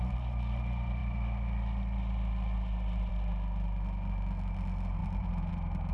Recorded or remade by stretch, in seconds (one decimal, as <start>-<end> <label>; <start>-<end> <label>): 0.0-5.9 recorded